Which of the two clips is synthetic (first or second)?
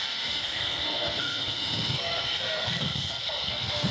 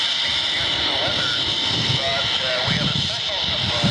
first